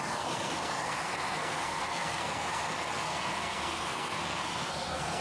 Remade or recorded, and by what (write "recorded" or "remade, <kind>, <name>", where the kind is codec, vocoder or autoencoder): remade, codec, SNAC